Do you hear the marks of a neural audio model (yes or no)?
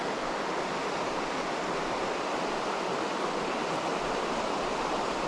no